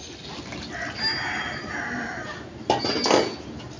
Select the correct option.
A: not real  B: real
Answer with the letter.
B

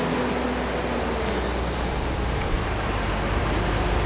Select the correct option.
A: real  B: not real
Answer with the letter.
A